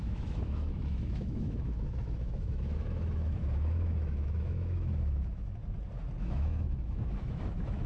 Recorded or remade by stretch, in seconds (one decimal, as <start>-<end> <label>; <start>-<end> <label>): 0.0-5.6 remade; 5.6-6.2 recorded; 6.2-7.9 remade